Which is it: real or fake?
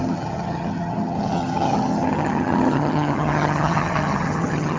fake